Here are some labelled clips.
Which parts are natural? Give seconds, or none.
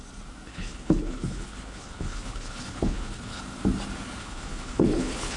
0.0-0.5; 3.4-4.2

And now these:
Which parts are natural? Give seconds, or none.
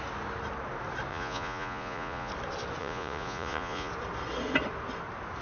0.0-1.1; 2.3-2.8; 3.9-5.4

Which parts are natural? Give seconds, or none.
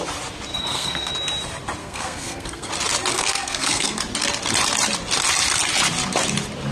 0.0-0.5; 1.1-1.8; 2.7-3.1; 4.0-6.7